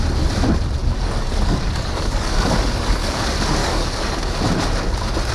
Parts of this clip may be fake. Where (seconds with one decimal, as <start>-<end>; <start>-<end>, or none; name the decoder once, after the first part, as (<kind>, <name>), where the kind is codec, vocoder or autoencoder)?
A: 0.8-3.2 (codec, DAC); 3.6-4.4